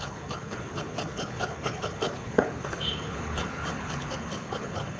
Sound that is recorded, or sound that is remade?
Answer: remade